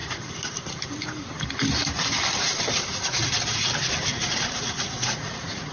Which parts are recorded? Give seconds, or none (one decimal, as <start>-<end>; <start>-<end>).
0.0-4.1